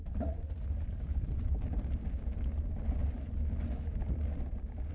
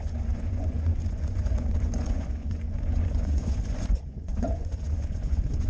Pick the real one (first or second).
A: first